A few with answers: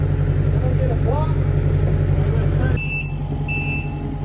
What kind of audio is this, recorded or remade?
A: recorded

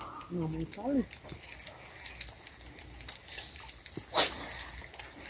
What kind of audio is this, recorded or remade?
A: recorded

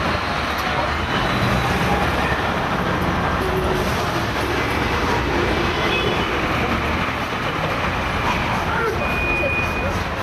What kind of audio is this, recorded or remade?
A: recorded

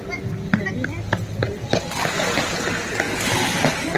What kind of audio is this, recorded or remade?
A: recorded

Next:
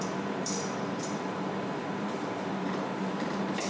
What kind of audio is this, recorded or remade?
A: remade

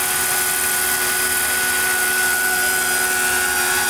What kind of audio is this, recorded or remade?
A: recorded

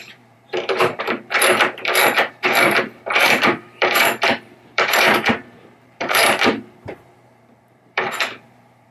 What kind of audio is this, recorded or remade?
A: remade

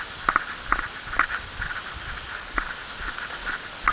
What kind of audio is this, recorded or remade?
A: recorded